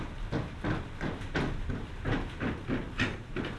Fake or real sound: real